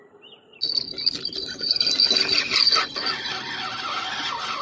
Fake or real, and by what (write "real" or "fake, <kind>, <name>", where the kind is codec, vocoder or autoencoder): real